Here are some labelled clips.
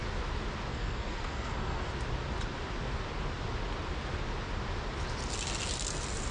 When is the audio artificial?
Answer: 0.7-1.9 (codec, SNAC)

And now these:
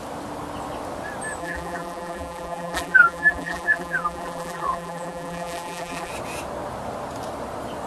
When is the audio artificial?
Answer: 1.4-6.1 (vocoder, BigVGAN v2)